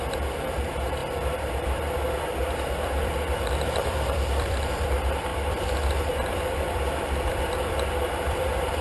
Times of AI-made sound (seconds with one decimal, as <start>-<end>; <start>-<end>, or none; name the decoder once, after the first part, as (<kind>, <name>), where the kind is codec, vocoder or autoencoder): 0.0-8.8 (vocoder, BigVGAN v2)